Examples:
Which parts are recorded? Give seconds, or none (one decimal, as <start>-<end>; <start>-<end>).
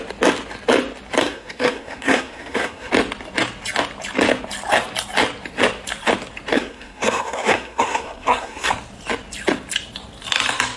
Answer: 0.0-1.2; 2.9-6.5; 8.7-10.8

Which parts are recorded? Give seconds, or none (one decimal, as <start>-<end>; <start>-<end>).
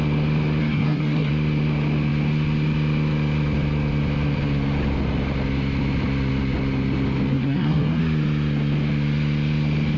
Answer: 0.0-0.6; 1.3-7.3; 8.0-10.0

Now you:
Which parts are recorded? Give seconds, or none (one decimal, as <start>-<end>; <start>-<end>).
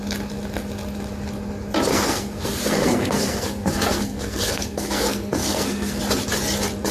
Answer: 0.0-1.9; 6.0-6.9